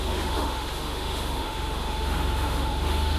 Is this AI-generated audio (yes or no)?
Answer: yes